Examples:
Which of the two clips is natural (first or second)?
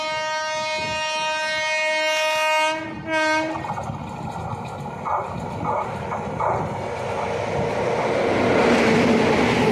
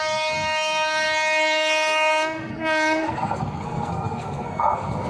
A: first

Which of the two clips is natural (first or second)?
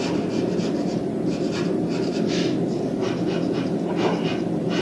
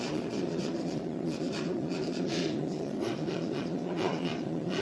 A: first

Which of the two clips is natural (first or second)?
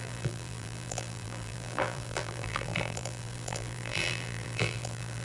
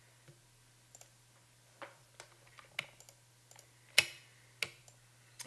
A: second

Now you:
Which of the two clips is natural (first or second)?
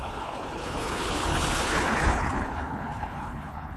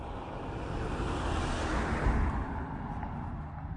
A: second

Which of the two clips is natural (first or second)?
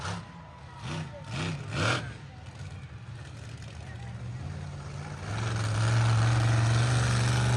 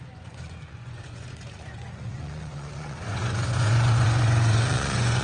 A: first